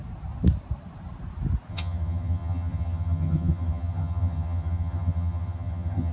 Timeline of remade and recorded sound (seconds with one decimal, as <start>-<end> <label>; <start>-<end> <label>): 0.0-1.7 recorded; 1.7-6.1 remade